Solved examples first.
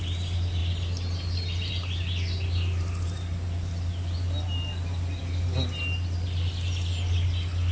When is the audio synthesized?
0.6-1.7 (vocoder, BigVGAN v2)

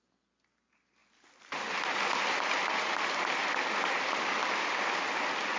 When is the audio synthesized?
3.4-4.6 (vocoder, BigVGAN v2)